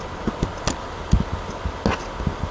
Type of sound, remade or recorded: recorded